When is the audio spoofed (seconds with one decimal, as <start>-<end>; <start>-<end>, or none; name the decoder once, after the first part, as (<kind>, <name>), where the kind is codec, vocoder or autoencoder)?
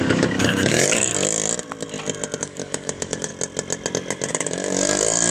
0.0-1.1 (codec, DAC); 2.4-3.3; 4.3-5.3